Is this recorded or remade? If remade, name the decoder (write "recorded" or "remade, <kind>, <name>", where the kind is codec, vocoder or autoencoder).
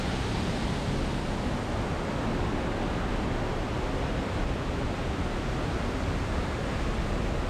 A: recorded